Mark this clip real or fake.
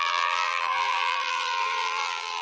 fake